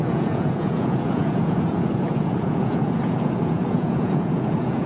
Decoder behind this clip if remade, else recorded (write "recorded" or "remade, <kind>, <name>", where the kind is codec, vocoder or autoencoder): remade, vocoder, Vocos